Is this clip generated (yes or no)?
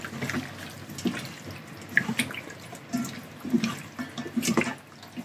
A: no